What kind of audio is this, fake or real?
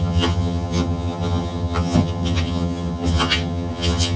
fake